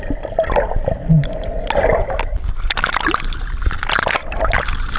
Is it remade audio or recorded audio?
recorded